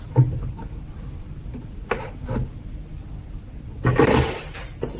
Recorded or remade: remade